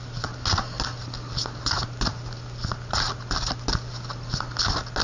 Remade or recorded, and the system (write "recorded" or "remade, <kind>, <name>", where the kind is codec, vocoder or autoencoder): recorded